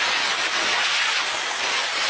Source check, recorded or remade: remade